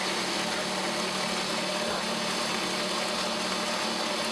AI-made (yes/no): no